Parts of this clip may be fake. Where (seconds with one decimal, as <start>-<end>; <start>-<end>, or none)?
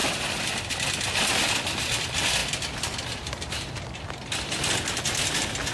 none